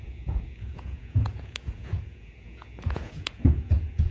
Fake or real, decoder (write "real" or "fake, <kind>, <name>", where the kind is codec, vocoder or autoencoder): fake, vocoder, Vocos